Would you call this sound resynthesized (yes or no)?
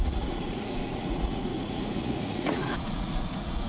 yes